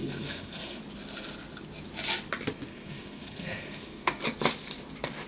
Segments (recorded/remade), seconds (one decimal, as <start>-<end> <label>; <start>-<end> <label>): 0.0-0.8 remade; 0.8-2.7 recorded; 2.7-4.2 remade; 4.2-5.3 recorded